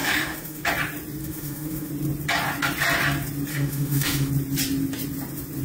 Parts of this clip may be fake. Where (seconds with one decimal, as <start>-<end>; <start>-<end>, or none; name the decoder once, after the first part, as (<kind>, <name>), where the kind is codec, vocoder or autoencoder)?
0.0-0.7 (autoencoder, DAC-VAE); 1.2-1.9; 3.5-4.3